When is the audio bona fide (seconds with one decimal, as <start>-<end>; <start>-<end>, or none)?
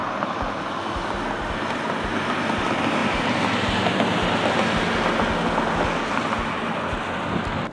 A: 0.0-7.7